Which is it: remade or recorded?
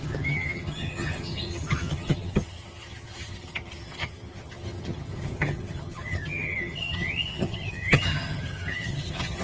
remade